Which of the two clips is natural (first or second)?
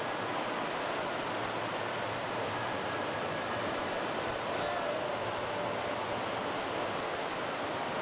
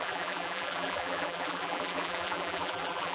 first